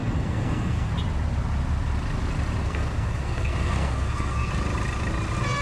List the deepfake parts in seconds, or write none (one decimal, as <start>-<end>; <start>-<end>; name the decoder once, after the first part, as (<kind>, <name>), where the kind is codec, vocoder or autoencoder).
0.0-0.9 (codec, SNAC); 2.6-4.5